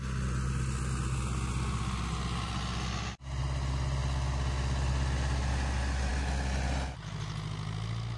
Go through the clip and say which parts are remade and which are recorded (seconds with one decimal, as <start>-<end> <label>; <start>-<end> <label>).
0.0-8.2 recorded

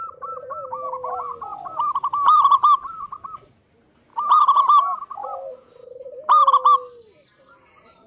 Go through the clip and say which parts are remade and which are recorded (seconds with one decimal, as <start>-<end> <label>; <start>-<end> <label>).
0.0-8.1 recorded

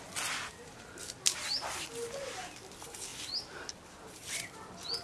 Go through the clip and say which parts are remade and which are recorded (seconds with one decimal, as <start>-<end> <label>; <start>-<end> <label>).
0.0-5.0 recorded